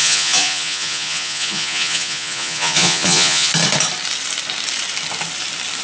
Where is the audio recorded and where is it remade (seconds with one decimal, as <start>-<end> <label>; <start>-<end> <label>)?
0.0-3.5 remade; 3.5-5.8 recorded